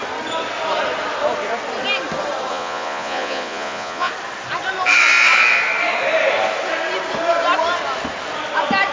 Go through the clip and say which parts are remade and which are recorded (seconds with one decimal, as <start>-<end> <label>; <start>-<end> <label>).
0.0-2.5 recorded; 2.5-4.1 remade; 4.1-8.9 recorded